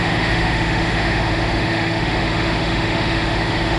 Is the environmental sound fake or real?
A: fake